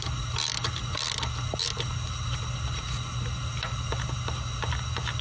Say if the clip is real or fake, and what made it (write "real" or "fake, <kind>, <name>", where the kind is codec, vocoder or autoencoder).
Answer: real